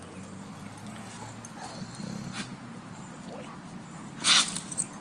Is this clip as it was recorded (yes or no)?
yes